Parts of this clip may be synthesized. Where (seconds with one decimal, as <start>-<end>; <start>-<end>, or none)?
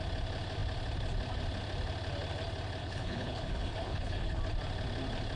2.8-4.4